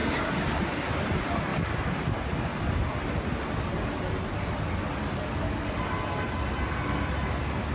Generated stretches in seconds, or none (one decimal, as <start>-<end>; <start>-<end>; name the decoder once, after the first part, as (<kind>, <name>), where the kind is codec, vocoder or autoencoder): none